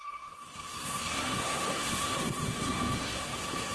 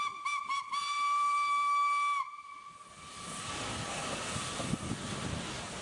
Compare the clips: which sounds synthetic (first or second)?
first